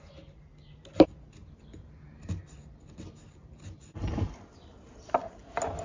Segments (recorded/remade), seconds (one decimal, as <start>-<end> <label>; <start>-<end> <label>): 0.0-5.8 recorded